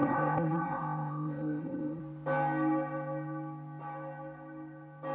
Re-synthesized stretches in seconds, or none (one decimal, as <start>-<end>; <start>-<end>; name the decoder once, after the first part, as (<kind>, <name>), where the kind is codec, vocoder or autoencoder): 0.0-2.0 (codec, ZipCodec)